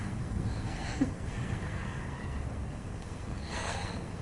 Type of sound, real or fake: fake